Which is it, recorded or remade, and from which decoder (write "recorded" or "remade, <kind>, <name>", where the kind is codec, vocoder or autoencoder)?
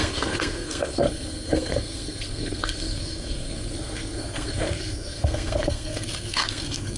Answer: remade, codec, SNAC